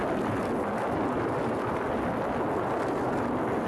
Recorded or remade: recorded